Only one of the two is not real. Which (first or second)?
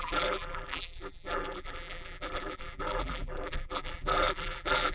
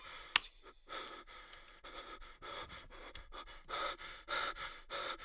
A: first